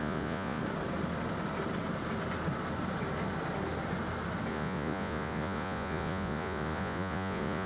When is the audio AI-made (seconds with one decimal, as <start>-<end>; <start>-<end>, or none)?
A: 0.0-0.6; 4.5-7.7